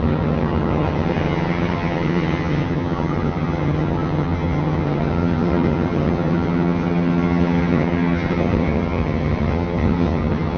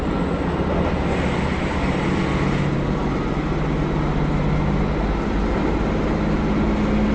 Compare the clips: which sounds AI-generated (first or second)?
first